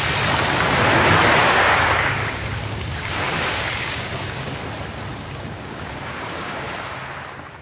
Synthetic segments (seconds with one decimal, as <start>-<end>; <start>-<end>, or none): 1.4-4.5; 5.1-7.0